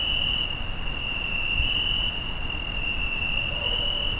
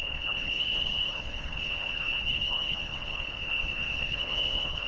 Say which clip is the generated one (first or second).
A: second